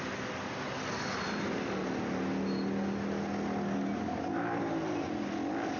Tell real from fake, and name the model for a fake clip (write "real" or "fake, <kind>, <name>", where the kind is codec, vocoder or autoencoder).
real